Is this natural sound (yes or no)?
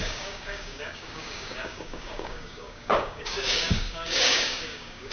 no